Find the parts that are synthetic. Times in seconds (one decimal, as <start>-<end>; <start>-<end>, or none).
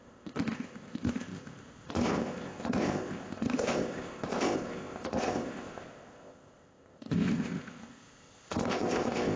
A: 0.0-9.4